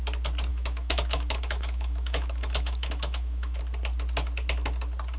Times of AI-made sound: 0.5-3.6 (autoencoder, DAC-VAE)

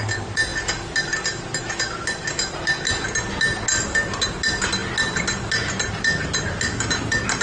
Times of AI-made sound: none